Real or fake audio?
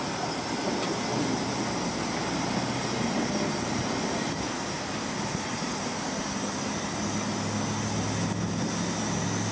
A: real